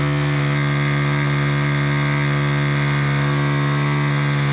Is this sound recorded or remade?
recorded